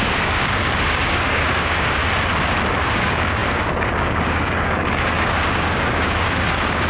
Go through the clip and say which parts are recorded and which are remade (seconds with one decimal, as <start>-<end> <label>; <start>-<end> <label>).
0.0-2.0 remade; 2.0-2.8 recorded; 2.8-6.9 remade